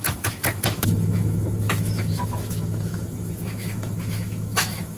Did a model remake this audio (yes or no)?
yes